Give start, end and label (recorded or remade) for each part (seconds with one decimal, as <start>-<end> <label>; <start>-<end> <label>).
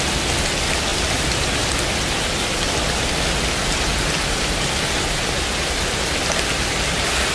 0.0-7.3 recorded